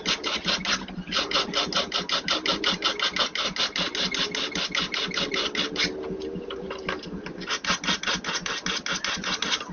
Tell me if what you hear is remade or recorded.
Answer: recorded